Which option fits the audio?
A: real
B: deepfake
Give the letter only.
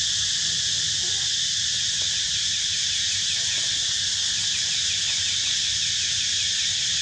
A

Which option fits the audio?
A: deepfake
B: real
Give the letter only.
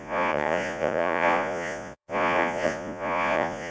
A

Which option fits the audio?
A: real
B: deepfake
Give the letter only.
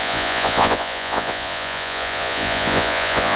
B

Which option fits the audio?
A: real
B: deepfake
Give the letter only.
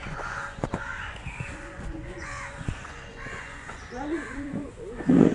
B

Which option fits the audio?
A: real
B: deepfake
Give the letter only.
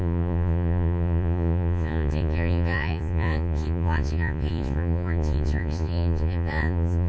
B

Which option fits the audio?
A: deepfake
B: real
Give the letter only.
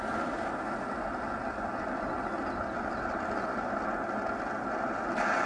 B